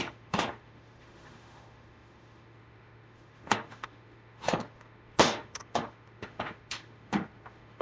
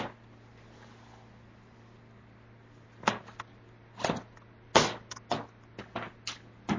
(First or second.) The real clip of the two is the second